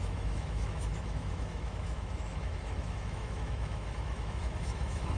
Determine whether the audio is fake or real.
fake